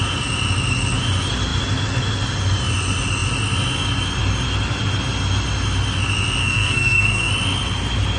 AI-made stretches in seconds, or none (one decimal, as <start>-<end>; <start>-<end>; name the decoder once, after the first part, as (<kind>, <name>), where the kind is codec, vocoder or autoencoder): 6.4-7.3 (codec, SNAC)